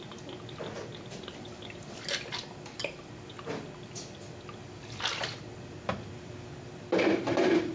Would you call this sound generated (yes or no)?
no